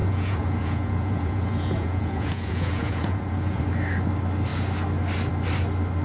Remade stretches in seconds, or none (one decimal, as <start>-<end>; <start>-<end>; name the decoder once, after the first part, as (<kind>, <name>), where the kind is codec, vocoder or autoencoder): 0.0-3.6 (vocoder, Vocos)

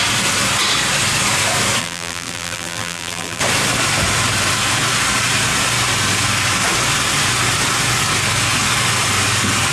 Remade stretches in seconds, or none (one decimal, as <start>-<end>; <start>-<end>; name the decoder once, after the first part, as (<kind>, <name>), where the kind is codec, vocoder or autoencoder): 1.8-3.4 (vocoder, BigVGAN v2)

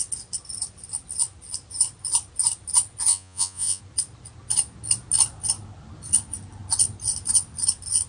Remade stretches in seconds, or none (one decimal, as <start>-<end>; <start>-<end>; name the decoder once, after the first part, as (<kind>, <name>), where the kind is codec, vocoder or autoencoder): 3.1-3.8 (vocoder, Vocos)

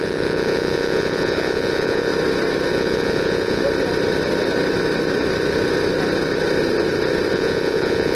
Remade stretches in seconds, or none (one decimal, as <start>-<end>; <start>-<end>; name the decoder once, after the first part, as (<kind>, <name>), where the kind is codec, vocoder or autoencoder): 0.0-2.1 (vocoder, Vocos); 2.7-3.6; 7.3-8.1

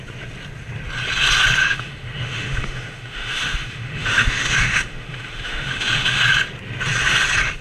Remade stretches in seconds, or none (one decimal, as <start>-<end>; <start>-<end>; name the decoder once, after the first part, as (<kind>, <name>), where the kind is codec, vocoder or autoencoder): 1.6-6.2 (autoencoder, DAC-VAE)

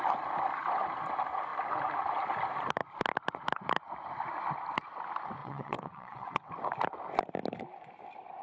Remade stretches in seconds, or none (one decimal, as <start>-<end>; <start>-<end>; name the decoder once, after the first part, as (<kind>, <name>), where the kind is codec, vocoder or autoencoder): 5.4-6.5 (vocoder, WaveNeXt)

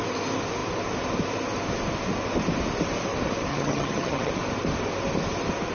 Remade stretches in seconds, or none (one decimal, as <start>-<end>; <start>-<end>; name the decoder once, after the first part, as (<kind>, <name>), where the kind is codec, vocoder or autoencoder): 3.5-4.3 (vocoder, HiFi-GAN)

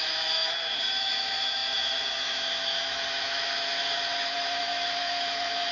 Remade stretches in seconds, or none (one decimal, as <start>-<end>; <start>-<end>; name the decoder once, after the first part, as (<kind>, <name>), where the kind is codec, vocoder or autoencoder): 0.0-5.7 (autoencoder, DAC-VAE)